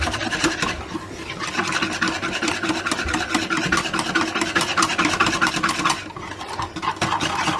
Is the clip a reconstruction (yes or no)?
no